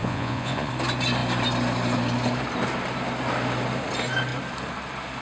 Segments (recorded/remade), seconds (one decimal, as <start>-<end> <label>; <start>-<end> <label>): 0.0-0.7 remade; 0.7-5.2 recorded